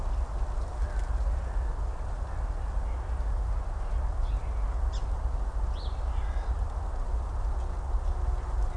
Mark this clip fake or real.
real